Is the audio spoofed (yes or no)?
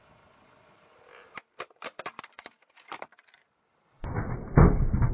no